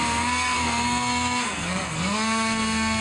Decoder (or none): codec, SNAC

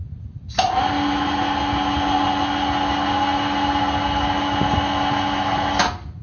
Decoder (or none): none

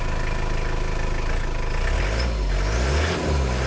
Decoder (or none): none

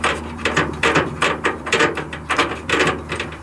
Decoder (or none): vocoder, BigVGAN v2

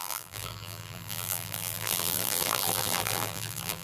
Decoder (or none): vocoder, BigVGAN v2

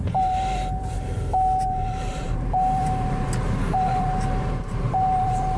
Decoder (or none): vocoder, BigVGAN v2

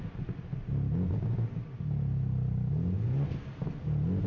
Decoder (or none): none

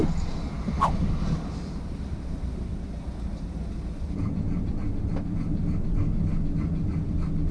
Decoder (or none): none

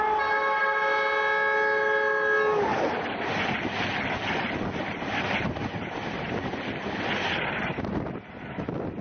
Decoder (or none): none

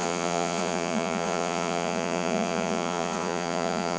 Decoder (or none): vocoder, Vocos